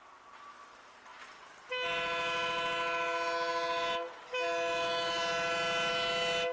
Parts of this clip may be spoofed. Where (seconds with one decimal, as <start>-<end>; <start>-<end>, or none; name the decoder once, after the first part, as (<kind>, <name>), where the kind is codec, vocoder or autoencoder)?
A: none